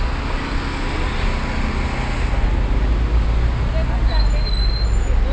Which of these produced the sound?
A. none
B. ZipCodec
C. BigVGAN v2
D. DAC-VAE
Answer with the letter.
A